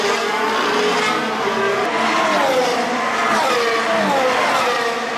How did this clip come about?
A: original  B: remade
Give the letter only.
A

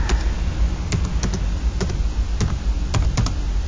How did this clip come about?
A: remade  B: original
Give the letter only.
B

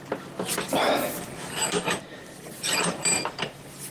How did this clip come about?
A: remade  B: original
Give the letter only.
B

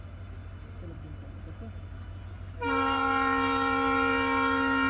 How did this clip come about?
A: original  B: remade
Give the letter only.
B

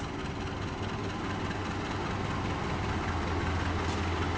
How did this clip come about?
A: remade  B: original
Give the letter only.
B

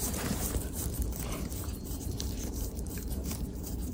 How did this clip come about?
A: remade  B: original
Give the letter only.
A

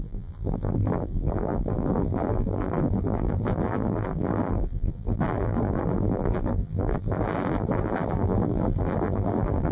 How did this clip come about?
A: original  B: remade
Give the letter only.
B